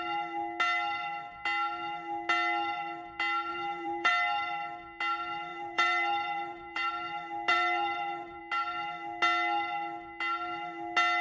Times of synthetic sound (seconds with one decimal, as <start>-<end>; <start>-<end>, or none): 3.5-4.1; 5.5-6.9; 7.5-8.4